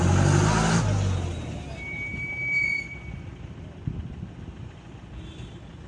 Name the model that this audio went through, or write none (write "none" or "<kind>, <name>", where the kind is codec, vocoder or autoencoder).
none